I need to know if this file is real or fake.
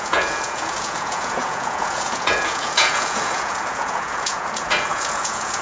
fake